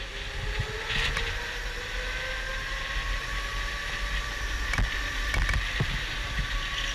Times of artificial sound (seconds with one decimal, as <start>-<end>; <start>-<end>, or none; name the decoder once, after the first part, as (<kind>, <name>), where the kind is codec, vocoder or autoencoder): none